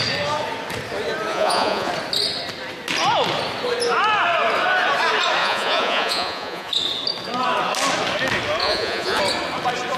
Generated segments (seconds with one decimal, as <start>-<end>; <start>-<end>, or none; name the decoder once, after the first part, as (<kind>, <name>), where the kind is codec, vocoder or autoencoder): 1.3-1.9 (vocoder, Vocos); 5.4-6.7; 8.6-9.2